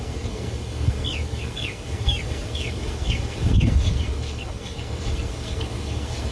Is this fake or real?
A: fake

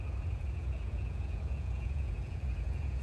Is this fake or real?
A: fake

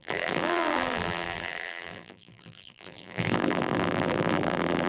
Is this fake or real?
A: fake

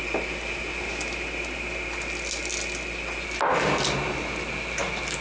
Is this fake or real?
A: real